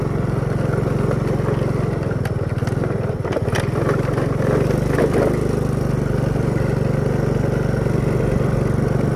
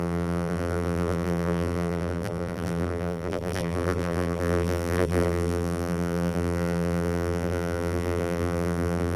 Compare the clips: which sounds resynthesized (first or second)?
second